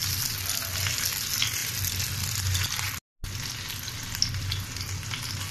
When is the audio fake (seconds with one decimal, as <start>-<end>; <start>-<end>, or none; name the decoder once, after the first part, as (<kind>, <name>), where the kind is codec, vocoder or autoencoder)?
0.0-0.6 (vocoder, BigVGAN v2)